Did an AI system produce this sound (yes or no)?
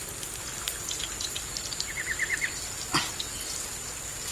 no